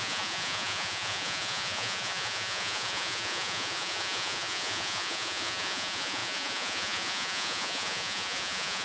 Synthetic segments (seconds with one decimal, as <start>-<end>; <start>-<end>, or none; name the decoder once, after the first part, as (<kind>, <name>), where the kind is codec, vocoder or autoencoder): 0.0-8.8 (vocoder, Vocos)